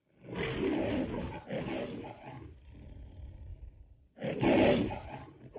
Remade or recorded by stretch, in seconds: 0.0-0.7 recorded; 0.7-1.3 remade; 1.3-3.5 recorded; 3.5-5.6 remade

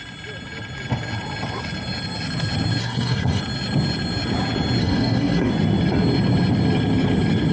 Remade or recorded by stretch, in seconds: 0.0-2.8 recorded; 2.8-3.4 remade; 3.4-4.8 recorded; 4.8-5.5 remade; 5.5-7.5 recorded

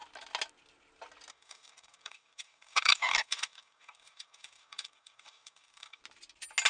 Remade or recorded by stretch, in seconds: 0.0-1.3 recorded; 1.3-6.0 remade; 6.0-6.7 recorded

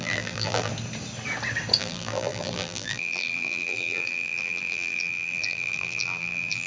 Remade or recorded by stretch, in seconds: 0.0-0.7 remade; 0.7-1.8 recorded; 1.8-6.7 remade

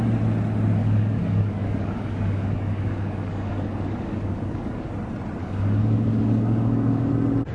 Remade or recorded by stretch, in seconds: 0.0-0.8 recorded; 0.8-4.9 remade; 4.9-5.4 recorded; 5.4-7.1 remade; 7.1-7.5 recorded

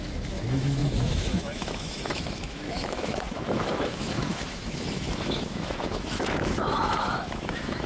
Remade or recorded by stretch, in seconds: 0.0-7.9 remade

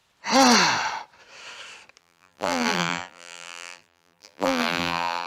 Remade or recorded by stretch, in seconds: 0.0-2.0 recorded; 2.0-5.3 remade

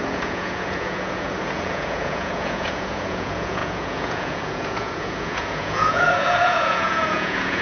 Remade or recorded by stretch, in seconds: 0.0-7.6 remade